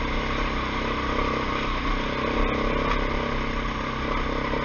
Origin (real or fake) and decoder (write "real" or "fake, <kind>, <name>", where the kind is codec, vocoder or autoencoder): real